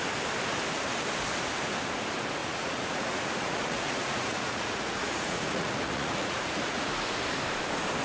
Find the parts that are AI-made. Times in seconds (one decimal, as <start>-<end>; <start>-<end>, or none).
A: 2.4-7.2

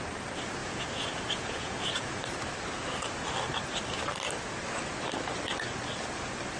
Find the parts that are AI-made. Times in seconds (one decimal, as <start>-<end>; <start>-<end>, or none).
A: 0.6-2.1